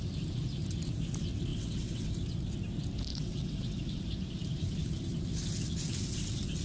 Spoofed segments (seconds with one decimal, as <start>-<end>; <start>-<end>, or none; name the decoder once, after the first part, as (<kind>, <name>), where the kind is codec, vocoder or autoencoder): 1.5-2.1 (vocoder, WaveNeXt); 3.1-4.0